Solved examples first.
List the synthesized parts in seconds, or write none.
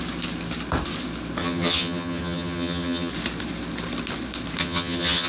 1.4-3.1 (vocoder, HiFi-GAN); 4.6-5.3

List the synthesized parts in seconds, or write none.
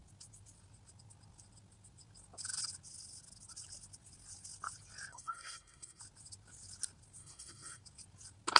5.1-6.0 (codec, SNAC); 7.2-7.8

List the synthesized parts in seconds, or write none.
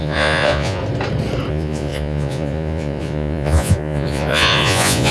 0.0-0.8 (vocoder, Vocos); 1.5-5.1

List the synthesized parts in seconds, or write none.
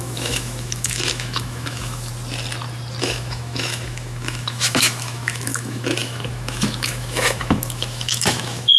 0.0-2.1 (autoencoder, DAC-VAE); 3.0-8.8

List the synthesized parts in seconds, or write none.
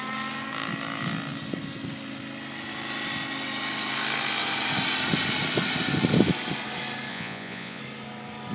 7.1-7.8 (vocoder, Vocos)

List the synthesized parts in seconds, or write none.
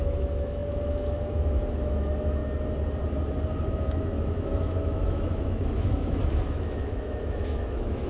0.0-2.4 (autoencoder, DAC-VAE); 3.7-8.1